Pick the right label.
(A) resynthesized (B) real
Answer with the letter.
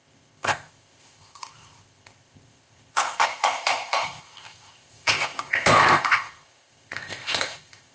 A